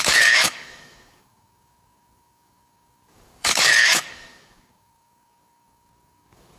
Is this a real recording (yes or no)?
no